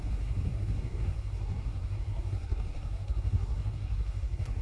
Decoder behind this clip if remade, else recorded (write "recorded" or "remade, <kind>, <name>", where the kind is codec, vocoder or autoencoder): remade, codec, SNAC